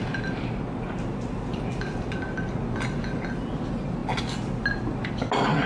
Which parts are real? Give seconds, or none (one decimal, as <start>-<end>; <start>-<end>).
0.0-5.7

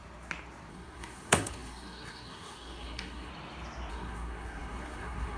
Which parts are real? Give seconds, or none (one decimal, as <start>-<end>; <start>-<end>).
0.0-0.7; 3.3-3.9

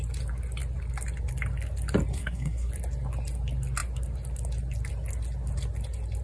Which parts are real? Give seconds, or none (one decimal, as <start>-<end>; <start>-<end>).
0.0-2.1; 2.7-6.2

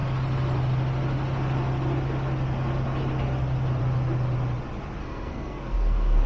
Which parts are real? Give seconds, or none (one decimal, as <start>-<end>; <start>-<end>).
0.0-5.0